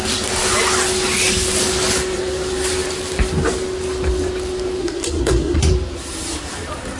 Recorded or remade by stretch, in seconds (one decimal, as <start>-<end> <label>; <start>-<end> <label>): 0.0-4.8 recorded; 4.8-5.6 remade; 5.6-7.0 recorded